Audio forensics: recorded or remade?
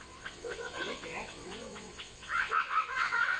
remade